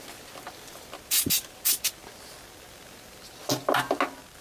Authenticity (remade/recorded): recorded